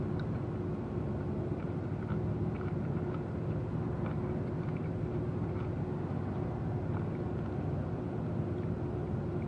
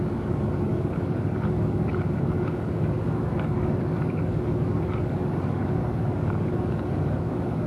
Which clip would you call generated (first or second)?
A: second